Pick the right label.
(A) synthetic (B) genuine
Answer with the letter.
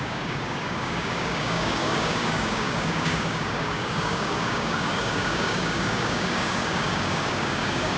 A